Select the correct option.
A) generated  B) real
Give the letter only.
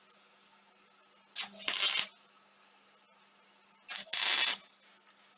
B